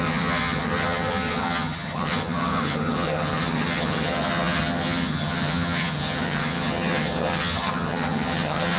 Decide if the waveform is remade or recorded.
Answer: remade